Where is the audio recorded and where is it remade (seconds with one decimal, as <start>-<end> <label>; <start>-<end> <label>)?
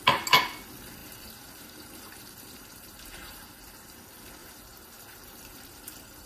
0.0-1.0 recorded; 1.0-3.9 remade; 3.9-4.4 recorded; 4.4-6.3 remade